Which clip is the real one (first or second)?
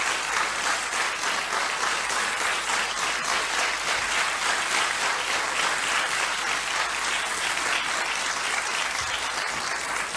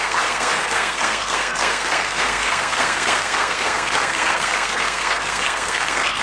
first